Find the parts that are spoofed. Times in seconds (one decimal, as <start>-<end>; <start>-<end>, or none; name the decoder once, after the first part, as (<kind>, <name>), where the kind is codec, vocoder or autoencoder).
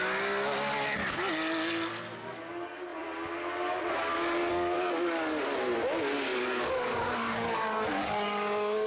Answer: 4.5-5.4 (codec, DAC); 6.3-8.9